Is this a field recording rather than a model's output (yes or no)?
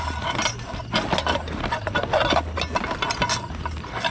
yes